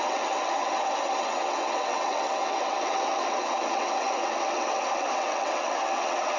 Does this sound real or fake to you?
fake